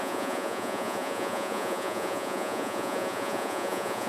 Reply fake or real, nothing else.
fake